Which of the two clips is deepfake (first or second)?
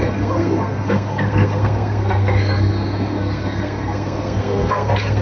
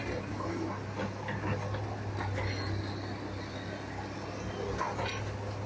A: first